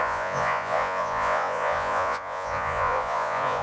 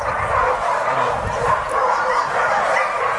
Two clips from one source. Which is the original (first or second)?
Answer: second